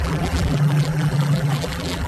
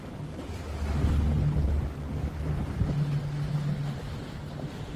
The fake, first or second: first